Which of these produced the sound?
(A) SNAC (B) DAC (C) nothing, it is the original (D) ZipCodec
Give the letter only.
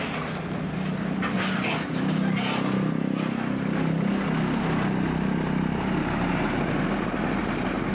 C